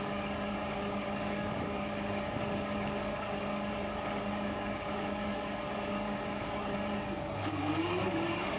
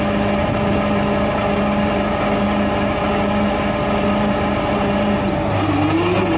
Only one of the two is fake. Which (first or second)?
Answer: first